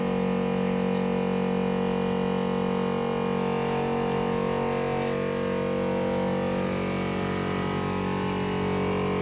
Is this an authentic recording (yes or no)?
yes